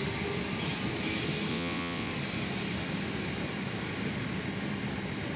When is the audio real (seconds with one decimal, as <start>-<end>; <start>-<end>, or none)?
0.0-1.5; 2.1-5.4